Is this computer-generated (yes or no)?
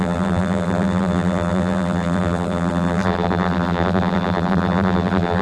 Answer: yes